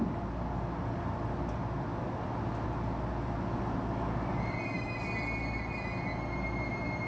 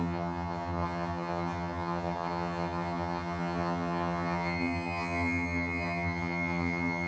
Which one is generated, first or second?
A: second